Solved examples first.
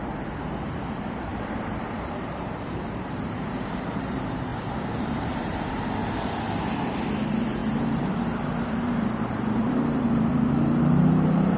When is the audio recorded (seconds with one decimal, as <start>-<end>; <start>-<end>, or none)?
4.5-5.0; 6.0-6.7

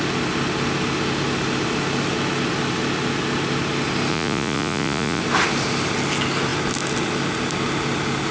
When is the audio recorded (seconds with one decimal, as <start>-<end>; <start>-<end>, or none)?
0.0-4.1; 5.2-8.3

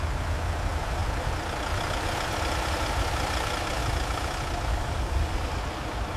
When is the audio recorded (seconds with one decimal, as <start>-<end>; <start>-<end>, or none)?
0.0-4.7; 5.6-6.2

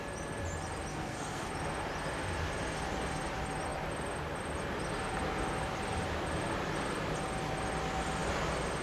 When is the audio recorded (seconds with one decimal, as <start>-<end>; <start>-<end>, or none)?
0.0-0.9; 1.5-8.8

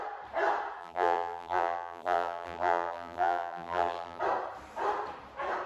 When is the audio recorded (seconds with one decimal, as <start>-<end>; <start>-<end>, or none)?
0.0-0.8; 4.2-5.7